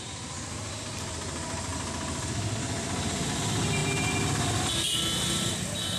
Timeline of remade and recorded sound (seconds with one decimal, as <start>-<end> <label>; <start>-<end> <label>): 0.0-6.0 recorded